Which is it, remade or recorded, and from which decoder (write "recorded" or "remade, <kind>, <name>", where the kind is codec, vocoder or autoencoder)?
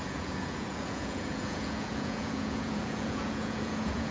remade, vocoder, Vocos